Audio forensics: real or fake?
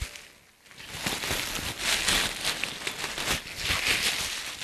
real